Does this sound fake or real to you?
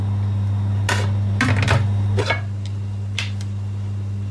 real